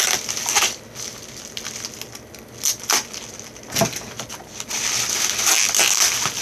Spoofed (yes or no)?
no